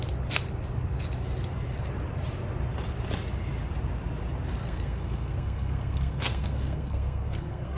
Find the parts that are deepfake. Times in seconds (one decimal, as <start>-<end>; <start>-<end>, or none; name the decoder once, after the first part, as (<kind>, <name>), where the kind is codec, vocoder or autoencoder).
4.6-7.8 (codec, SNAC)